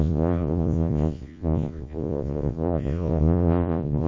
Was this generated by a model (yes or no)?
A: yes